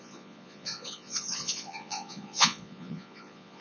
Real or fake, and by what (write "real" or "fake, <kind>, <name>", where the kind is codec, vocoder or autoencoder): fake, vocoder, Vocos